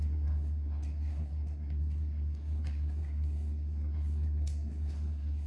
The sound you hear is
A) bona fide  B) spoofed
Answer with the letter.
B